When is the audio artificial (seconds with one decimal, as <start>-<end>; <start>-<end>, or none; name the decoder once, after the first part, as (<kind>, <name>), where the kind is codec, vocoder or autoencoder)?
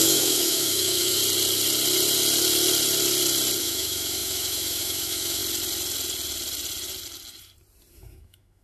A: 0.0-1.2 (autoencoder, DAC-VAE); 3.6-5.4; 7.9-8.6